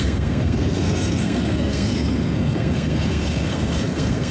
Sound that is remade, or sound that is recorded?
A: remade